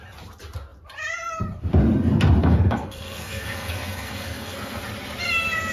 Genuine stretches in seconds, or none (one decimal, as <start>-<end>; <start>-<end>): 0.0-2.4; 4.8-5.7